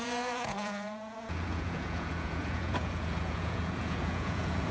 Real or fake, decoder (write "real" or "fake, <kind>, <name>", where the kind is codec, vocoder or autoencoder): fake, vocoder, Vocos